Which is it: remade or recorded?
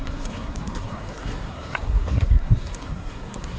remade